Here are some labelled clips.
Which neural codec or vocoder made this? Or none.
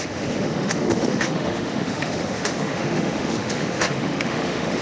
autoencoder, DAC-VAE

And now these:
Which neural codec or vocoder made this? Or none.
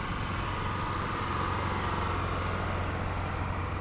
none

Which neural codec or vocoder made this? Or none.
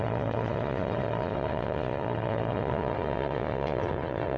vocoder, Vocos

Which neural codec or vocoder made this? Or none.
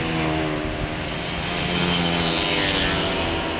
none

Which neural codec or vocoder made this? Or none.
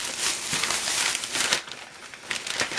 none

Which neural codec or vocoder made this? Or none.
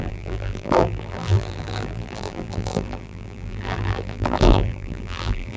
vocoder, BigVGAN v2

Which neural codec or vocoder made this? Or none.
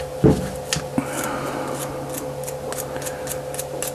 none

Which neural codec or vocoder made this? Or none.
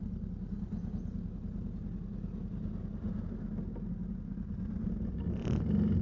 none